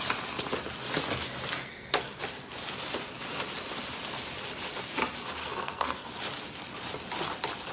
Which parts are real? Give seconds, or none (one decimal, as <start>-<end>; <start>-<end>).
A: 0.0-1.6; 2.2-5.4; 6.1-7.7